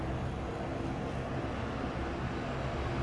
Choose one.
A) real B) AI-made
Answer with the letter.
A